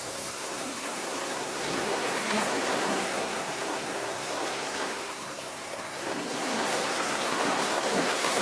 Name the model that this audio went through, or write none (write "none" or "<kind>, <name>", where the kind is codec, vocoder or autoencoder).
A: codec, SNAC